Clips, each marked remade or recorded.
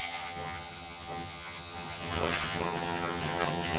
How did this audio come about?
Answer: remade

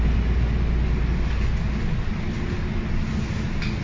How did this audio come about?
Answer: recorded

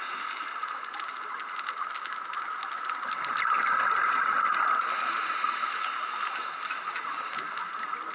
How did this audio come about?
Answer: recorded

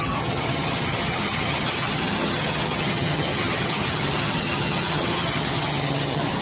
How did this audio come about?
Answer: remade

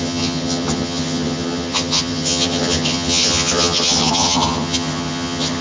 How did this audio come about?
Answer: remade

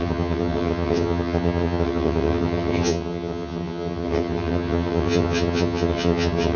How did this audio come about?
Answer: remade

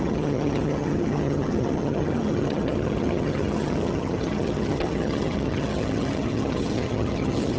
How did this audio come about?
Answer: remade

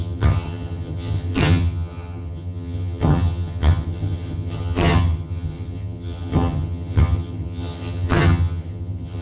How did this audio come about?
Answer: remade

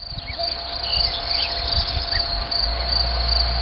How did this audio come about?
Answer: recorded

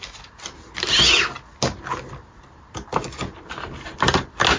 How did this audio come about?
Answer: recorded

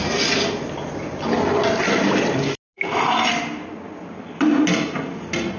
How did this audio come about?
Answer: recorded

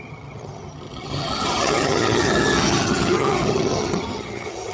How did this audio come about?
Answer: remade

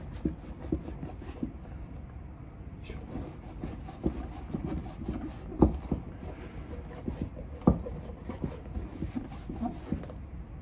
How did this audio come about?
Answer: recorded